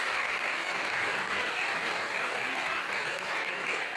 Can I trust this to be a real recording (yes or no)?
no